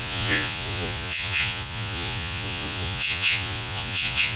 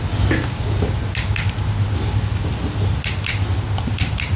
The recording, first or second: second